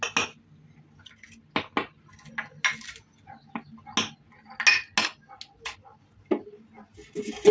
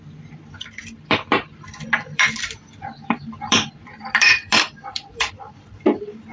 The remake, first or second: second